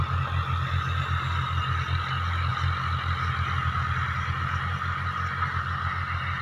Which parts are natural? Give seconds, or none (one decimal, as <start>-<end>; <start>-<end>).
0.0-6.4